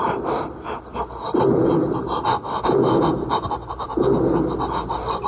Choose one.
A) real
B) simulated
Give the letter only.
A